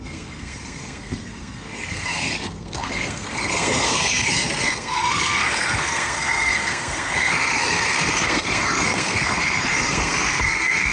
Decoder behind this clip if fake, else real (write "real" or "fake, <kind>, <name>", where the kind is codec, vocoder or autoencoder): fake, codec, SNAC